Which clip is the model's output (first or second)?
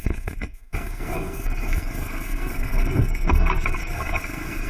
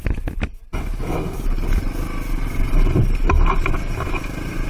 first